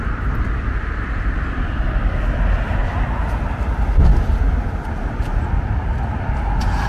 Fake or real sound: real